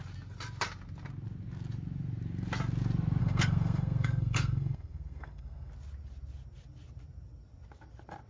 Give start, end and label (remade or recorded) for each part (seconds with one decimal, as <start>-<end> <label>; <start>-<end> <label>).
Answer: 0.0-3.2 recorded; 3.2-5.7 remade; 5.7-8.3 recorded